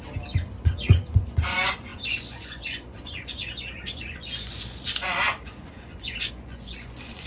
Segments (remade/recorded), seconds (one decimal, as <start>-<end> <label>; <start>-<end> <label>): 0.0-0.6 recorded; 0.6-7.3 remade